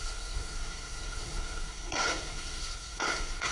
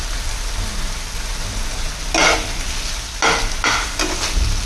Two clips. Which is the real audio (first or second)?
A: second